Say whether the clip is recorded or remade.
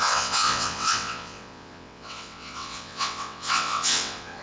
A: remade